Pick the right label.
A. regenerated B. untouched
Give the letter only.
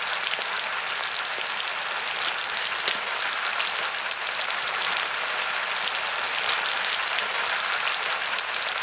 B